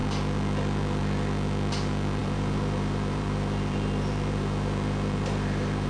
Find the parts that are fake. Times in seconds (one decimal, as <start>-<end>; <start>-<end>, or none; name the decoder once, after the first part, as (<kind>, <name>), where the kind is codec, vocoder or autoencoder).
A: 2.2-5.9 (vocoder, BigVGAN v2)